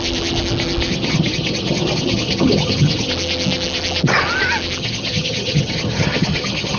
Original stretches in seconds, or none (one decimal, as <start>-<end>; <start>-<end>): 0.0-0.9; 3.1-4.8